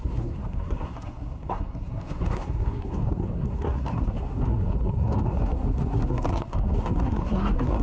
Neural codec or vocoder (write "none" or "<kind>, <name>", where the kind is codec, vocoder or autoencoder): codec, SNAC